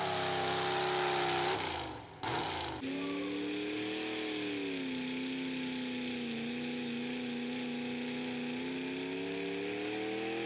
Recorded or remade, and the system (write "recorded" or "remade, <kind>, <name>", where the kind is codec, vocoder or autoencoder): recorded